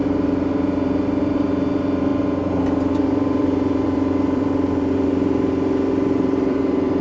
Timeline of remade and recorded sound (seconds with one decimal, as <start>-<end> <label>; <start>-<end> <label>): 0.0-7.0 remade